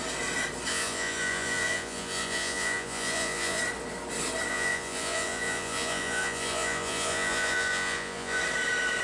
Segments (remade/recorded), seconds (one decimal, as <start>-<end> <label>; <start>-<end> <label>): 0.0-0.7 recorded; 0.7-3.6 remade; 3.6-4.5 recorded; 4.5-8.4 remade; 8.4-9.0 recorded